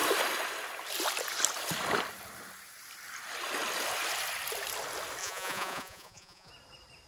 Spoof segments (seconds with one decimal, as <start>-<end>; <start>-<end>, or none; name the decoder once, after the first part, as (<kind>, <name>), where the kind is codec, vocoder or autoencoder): 5.2-6.5 (vocoder, Vocos)